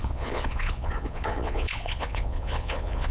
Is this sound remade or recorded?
remade